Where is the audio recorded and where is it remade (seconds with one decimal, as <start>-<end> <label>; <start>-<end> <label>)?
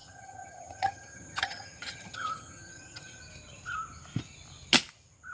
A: 0.0-3.2 remade; 3.2-5.3 recorded